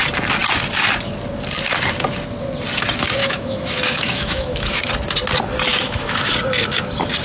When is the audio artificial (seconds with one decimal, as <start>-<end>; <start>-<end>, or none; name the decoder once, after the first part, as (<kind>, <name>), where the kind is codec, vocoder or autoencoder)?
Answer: 3.2-4.8 (autoencoder, DAC-VAE); 5.7-6.3